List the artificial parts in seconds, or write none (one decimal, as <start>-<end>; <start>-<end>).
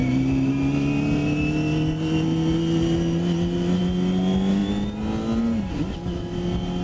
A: none